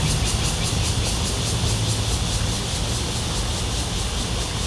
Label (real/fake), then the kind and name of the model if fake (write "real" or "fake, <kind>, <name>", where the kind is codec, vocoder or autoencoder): real